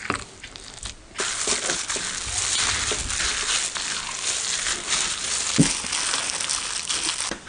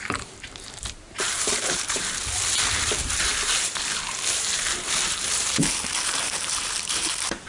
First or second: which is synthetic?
second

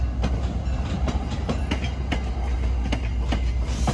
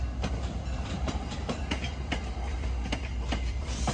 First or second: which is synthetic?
second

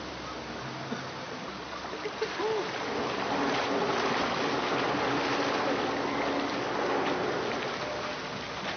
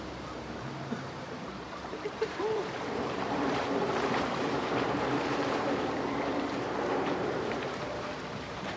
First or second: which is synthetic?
second